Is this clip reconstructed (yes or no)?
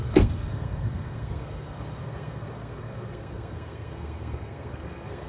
yes